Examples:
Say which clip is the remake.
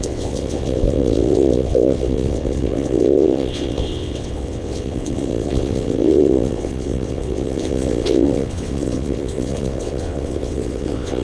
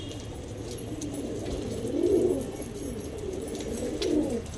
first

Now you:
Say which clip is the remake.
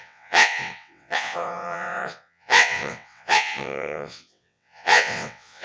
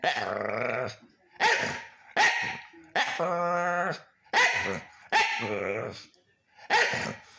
first